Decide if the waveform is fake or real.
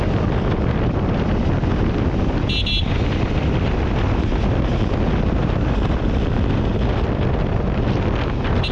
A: real